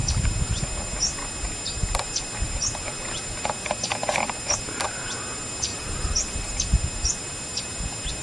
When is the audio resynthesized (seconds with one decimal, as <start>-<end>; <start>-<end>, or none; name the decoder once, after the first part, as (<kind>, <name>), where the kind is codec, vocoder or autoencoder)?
5.7-6.5 (vocoder, BigVGAN v2)